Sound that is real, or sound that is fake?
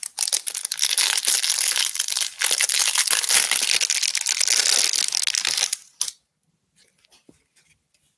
real